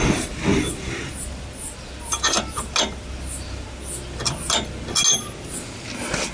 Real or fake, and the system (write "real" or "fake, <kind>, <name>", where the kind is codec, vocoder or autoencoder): real